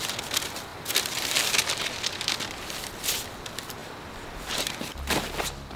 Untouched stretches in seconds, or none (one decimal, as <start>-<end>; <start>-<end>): 0.0-5.8